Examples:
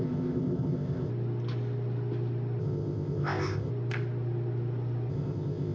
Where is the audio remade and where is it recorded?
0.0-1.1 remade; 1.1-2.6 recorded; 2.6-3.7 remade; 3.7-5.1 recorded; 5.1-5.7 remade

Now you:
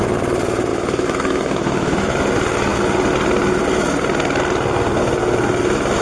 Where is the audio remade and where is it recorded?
0.0-0.7 recorded; 0.7-2.1 remade; 2.1-6.0 recorded

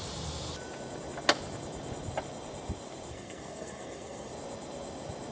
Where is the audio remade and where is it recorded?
0.0-3.1 recorded; 3.1-4.3 remade; 4.3-5.3 recorded

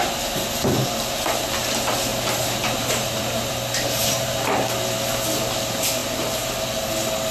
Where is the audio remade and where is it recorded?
0.0-2.1 recorded; 2.1-4.4 remade; 4.4-6.0 recorded; 6.0-6.5 remade; 6.5-7.3 recorded

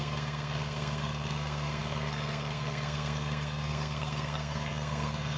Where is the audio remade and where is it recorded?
0.0-5.4 remade

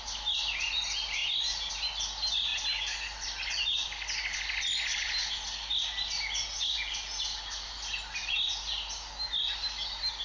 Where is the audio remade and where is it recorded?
0.0-10.2 recorded

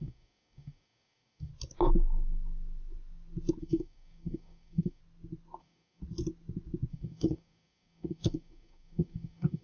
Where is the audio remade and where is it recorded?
0.0-1.5 remade; 1.5-3.6 recorded; 3.6-5.0 remade; 5.0-5.6 recorded; 5.6-6.0 remade; 6.0-6.9 recorded; 6.9-9.6 remade

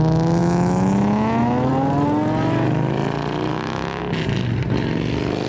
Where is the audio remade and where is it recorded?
0.0-0.4 recorded; 0.4-1.7 remade; 1.7-3.5 recorded; 3.5-4.0 remade; 4.0-5.5 recorded